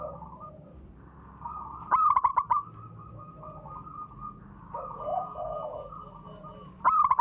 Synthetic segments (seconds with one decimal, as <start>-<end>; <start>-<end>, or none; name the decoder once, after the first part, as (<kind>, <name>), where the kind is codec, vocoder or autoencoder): none